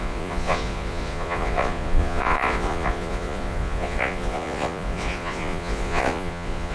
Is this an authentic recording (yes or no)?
no